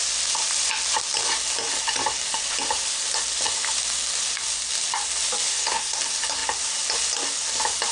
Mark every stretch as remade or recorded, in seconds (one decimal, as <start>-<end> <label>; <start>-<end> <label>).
0.0-5.5 recorded; 5.5-6.0 remade; 6.0-7.9 recorded